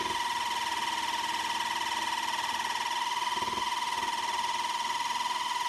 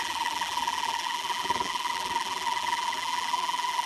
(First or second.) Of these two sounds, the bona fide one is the first